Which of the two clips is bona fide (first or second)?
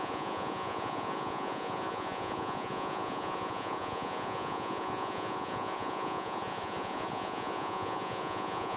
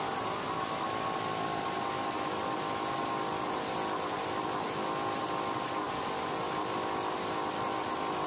second